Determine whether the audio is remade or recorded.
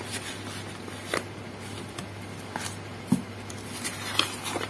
recorded